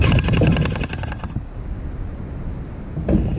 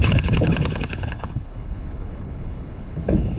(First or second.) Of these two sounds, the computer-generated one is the second